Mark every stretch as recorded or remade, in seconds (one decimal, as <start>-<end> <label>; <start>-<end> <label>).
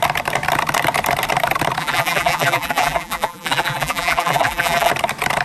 0.0-1.8 recorded; 1.8-4.9 remade; 4.9-5.4 recorded